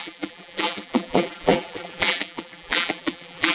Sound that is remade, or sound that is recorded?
remade